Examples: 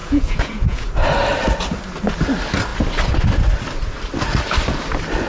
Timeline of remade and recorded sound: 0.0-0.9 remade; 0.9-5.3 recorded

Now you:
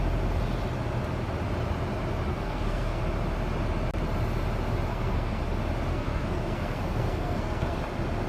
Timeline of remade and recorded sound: 0.0-2.3 recorded; 2.3-3.0 remade; 3.0-4.9 recorded; 4.9-5.4 remade; 5.4-5.9 recorded; 5.9-7.8 remade; 7.8-8.3 recorded

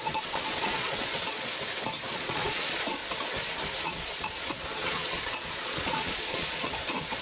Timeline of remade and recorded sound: 0.0-1.5 remade; 1.5-2.1 recorded; 2.1-3.0 remade; 3.0-3.8 recorded; 3.8-7.2 remade

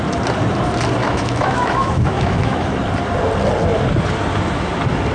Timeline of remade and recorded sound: 0.0-1.0 recorded; 1.0-2.7 remade; 2.7-5.1 recorded

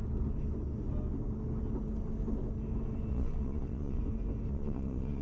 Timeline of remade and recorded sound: 0.0-3.1 recorded; 3.1-4.0 remade; 4.0-4.5 recorded; 4.5-5.2 remade

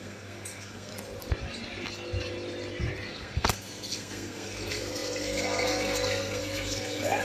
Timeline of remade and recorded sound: 0.0-0.9 remade; 0.9-3.1 recorded; 3.1-7.2 remade

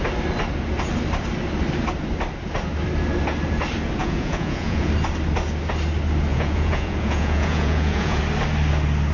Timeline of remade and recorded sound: 0.0-4.0 recorded; 4.0-4.9 remade; 4.9-6.3 recorded; 6.3-8.2 remade; 8.2-9.1 recorded

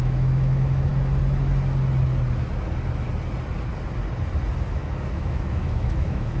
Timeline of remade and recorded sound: 0.0-0.9 remade; 0.9-4.7 recorded; 4.7-6.4 remade